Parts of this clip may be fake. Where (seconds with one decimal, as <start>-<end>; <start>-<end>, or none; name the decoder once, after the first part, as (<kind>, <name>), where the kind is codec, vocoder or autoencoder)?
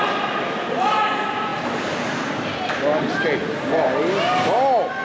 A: none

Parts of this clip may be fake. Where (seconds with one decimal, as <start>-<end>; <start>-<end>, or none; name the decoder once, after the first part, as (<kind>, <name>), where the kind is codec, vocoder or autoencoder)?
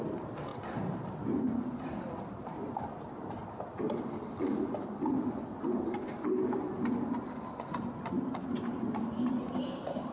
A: 0.0-0.5 (vocoder, BigVGAN v2); 1.2-3.4; 8.6-10.1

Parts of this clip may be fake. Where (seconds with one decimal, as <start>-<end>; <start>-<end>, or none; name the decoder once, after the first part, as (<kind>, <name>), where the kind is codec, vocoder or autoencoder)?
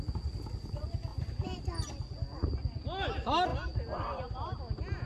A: 1.1-1.6 (vocoder, BigVGAN v2); 3.5-4.6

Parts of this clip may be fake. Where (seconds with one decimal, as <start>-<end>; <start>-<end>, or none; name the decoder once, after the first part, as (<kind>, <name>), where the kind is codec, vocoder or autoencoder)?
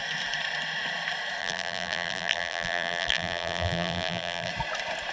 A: 1.4-4.5 (vocoder, BigVGAN v2)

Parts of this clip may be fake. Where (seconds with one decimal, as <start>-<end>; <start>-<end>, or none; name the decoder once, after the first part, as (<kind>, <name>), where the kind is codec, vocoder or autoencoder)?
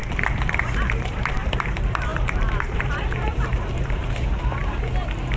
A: 0.6-4.6 (vocoder, BigVGAN v2)